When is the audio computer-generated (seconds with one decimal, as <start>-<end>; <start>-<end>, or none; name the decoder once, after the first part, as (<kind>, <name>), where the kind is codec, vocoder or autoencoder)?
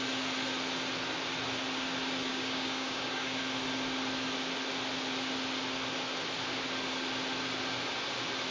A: 2.3-3.4 (codec, DAC)